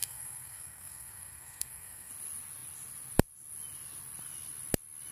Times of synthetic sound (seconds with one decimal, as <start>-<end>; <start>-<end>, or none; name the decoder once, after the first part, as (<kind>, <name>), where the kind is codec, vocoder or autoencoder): 0.0-2.1 (codec, SNAC)